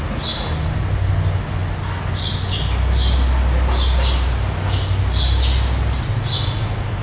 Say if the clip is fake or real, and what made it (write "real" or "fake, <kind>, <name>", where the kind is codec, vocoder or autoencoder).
real